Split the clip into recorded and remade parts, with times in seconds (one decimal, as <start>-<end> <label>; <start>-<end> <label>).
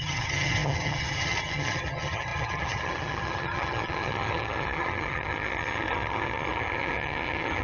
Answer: 0.0-7.6 remade